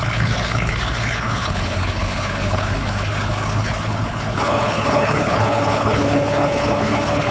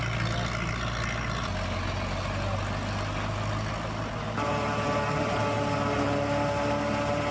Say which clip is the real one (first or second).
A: second